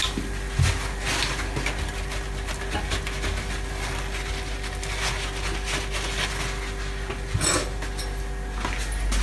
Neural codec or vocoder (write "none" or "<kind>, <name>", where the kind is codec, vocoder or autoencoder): none